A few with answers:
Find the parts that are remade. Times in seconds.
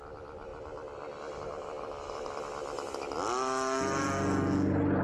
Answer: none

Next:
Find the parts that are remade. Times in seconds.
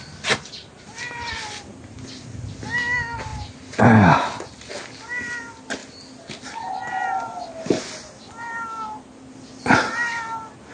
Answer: none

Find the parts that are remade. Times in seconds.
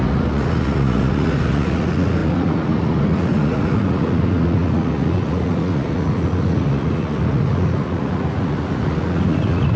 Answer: 0.0-9.8 (vocoder, Vocos)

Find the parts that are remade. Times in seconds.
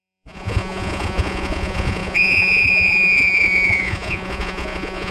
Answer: 0.0-5.1 (vocoder, Vocos)